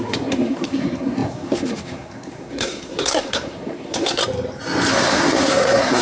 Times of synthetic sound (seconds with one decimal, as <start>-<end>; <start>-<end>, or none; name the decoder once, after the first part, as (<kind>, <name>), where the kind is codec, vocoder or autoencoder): 0.0-4.2 (codec, SNAC); 4.9-6.0